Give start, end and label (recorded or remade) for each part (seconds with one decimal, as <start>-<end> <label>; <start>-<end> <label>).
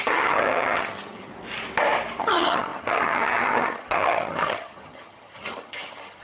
0.0-1.3 remade; 1.3-2.2 recorded; 2.2-6.2 remade